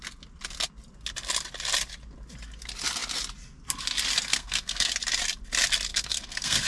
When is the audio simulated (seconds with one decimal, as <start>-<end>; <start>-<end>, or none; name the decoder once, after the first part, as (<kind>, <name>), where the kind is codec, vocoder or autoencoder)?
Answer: 4.3-4.8 (codec, SNAC); 5.9-6.7